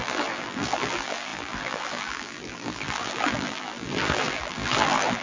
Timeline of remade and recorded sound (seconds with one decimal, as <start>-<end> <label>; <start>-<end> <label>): 0.0-5.2 remade